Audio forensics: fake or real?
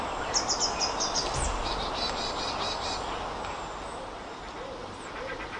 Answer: real